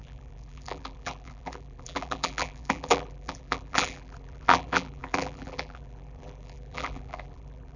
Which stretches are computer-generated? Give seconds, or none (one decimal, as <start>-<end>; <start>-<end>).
0.0-7.8